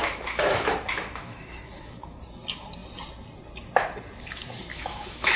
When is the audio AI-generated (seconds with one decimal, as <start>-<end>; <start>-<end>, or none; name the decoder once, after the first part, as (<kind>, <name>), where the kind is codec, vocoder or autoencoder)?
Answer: 0.0-2.2 (autoencoder, DAC-VAE); 4.7-5.4